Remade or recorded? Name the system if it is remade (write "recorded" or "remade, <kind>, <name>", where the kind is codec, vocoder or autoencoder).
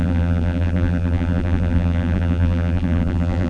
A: remade, vocoder, BigVGAN v2